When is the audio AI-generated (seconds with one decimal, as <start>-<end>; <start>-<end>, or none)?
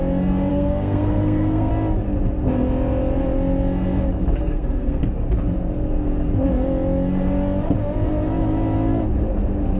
0.5-1.7; 4.4-5.0